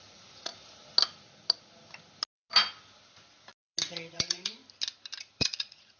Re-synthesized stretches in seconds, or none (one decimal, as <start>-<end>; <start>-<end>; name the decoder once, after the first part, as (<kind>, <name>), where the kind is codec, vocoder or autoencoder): 0.0-0.5 (vocoder, Vocos); 4.1-4.6; 5.2-6.0